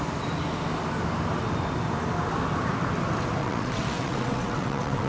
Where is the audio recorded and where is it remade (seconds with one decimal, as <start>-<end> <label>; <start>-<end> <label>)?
0.0-3.4 recorded; 3.4-5.1 remade